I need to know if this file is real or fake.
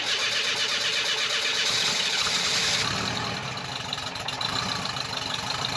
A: real